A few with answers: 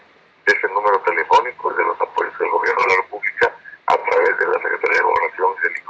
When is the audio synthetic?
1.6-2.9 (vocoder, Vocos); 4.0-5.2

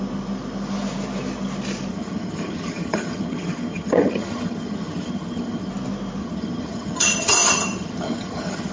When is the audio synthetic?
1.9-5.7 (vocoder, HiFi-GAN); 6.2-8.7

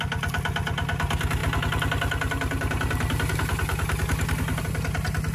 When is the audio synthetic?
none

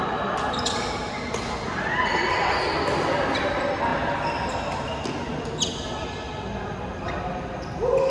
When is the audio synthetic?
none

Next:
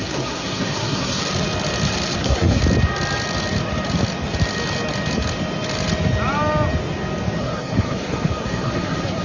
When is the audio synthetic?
0.0-1.2 (codec, SNAC); 2.2-2.6; 7.4-9.2